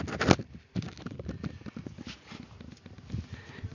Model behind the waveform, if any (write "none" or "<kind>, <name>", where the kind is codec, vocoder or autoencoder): none